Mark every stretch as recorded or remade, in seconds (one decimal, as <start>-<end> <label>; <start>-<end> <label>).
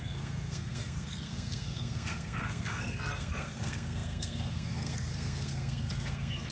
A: 0.0-6.5 remade